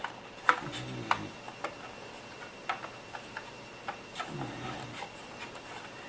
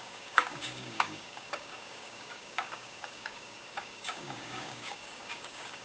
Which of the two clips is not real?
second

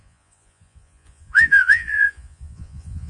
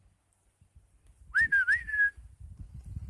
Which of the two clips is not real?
first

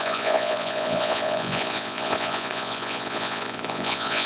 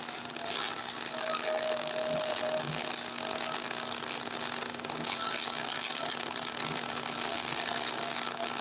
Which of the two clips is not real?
first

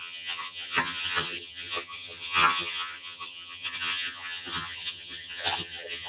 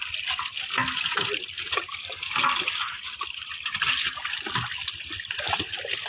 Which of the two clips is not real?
first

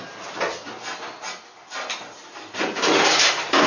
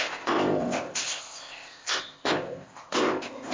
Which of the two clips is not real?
second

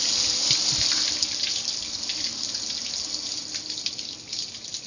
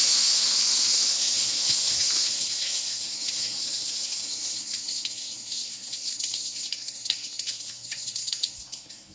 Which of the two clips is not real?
second